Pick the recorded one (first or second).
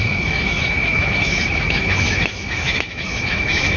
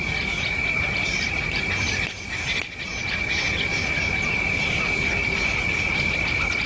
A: second